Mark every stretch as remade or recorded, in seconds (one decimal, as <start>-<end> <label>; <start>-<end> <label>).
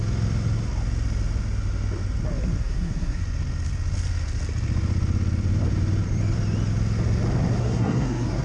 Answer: 0.0-2.6 recorded; 2.6-3.2 remade; 3.2-7.6 recorded; 7.6-8.4 remade